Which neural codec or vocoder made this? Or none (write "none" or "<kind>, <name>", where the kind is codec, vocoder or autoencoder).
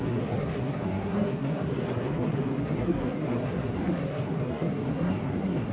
codec, SNAC